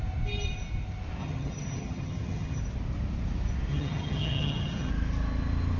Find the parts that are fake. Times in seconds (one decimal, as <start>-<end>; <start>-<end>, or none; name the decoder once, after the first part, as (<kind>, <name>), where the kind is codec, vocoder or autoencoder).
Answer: 1.2-2.6 (vocoder, HiFi-GAN); 3.7-4.9